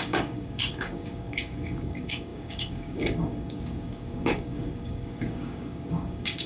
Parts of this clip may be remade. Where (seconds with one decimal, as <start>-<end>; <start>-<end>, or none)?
0.0-6.5